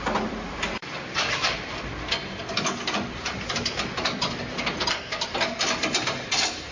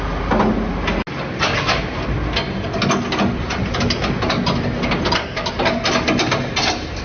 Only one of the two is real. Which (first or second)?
second